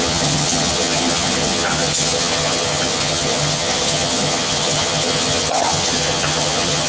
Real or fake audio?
fake